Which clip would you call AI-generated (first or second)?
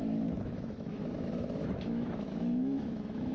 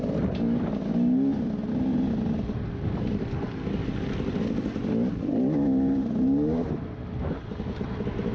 first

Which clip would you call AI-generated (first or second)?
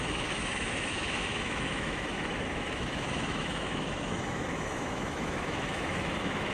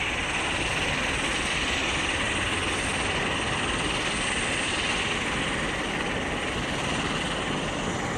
first